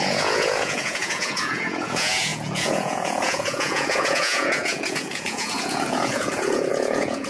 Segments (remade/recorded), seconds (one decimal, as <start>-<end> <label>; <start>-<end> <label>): 0.0-7.3 remade